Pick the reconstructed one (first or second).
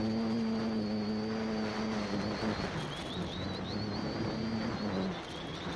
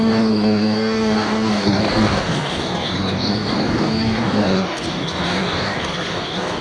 second